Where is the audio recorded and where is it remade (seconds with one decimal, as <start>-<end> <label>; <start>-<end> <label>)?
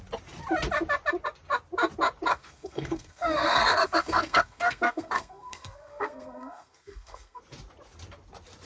0.0-2.3 recorded; 2.3-7.4 remade; 7.4-8.7 recorded